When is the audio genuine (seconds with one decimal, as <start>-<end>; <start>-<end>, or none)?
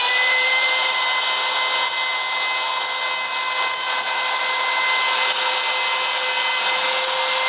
1.0-7.5